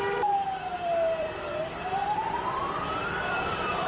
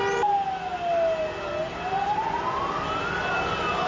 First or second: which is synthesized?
first